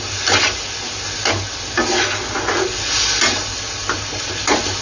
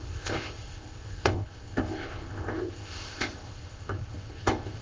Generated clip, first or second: second